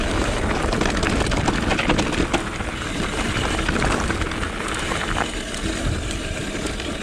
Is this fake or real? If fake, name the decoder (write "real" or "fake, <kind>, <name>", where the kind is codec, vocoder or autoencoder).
real